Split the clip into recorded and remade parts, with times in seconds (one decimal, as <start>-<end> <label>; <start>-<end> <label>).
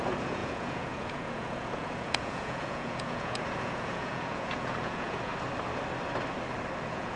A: 0.0-5.3 remade; 5.3-6.8 recorded; 6.8-7.2 remade